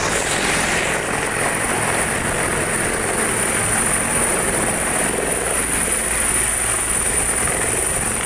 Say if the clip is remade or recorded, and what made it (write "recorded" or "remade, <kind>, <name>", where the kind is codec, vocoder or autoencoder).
recorded